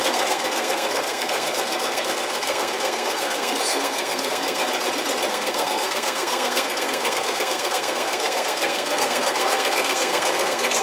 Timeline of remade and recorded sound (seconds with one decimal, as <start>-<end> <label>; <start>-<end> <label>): 0.0-4.7 remade; 4.7-5.3 recorded; 5.3-10.8 remade